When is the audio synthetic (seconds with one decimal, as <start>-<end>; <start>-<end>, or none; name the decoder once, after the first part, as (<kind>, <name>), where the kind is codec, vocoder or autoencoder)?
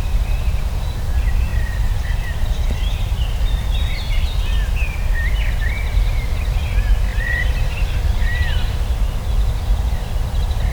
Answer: 1.5-3.5 (vocoder, BigVGAN v2); 7.1-8.9